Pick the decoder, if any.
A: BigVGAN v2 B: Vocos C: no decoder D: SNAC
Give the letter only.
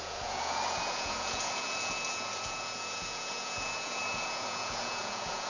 B